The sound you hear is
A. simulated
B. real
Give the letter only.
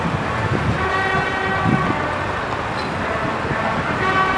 B